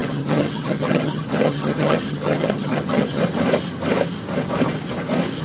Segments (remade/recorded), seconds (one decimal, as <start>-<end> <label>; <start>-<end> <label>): 0.0-3.2 remade; 3.2-5.4 recorded